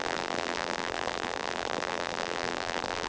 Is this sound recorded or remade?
remade